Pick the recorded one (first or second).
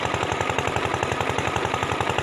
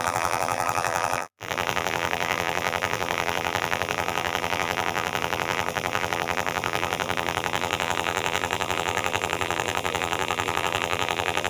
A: first